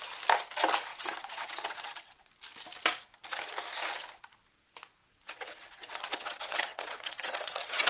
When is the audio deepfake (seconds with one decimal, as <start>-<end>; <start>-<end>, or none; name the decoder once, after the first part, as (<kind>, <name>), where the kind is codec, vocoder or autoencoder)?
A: 0.9-2.3 (vocoder, WaveNeXt); 5.0-7.9